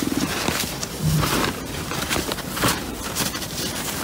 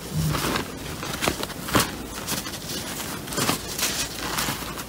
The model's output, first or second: first